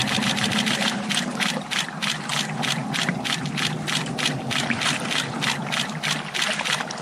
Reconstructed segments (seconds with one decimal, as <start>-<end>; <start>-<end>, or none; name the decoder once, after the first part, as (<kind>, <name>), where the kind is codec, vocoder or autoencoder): 0.0-2.3 (vocoder, BigVGAN v2)